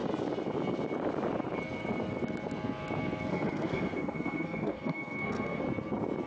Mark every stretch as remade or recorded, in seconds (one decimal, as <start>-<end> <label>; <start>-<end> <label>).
0.0-3.3 recorded; 3.3-5.6 remade; 5.6-6.3 recorded